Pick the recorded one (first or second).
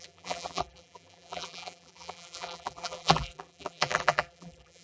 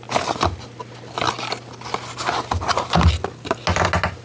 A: second